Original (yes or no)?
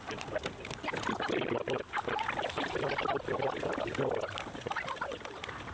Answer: yes